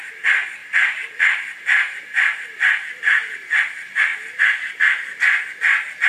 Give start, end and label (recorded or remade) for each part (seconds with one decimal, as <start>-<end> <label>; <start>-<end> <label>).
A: 0.0-0.6 recorded; 0.6-3.0 remade; 3.0-6.1 recorded

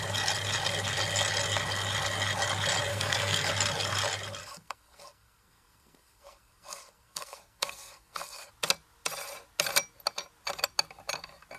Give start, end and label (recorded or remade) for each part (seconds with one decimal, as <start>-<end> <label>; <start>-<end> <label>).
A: 0.0-2.9 recorded; 2.9-3.5 remade; 3.5-4.4 recorded; 4.4-8.5 remade; 8.5-11.6 recorded

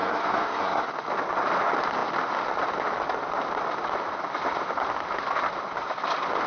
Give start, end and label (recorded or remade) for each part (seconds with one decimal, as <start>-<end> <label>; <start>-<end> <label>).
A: 0.0-0.9 remade; 0.9-6.5 recorded

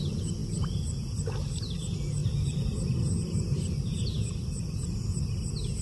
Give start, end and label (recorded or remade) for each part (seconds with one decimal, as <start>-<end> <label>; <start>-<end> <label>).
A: 0.0-5.8 recorded

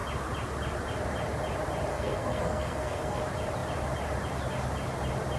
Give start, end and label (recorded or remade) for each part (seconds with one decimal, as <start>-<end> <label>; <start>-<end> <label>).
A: 0.0-1.9 recorded; 1.9-3.2 remade; 3.2-5.4 recorded

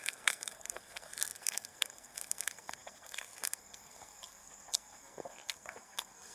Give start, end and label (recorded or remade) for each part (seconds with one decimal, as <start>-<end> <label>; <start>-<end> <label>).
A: 0.0-6.3 remade

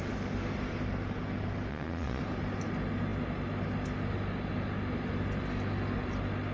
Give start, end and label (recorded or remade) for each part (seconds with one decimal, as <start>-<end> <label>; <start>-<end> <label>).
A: 0.0-1.7 recorded; 1.7-2.2 remade; 2.2-6.5 recorded